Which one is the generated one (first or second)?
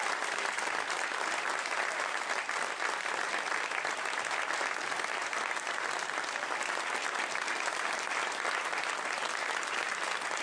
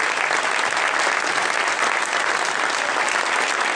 first